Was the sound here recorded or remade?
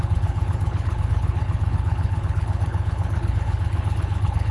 remade